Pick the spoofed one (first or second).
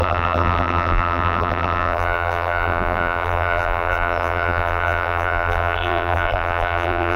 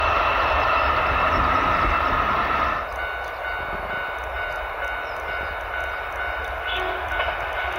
first